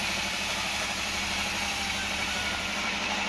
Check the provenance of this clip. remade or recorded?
remade